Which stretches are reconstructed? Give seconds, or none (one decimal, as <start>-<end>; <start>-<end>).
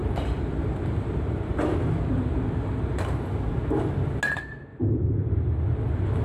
0.0-3.5; 4.7-5.3